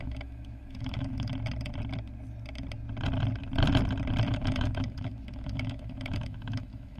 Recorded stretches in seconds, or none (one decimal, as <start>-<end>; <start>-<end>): 1.3-4.3